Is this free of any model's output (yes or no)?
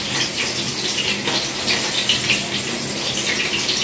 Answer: yes